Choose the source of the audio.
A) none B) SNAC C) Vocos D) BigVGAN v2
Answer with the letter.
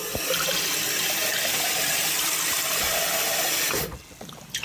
A